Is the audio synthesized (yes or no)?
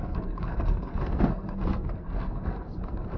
yes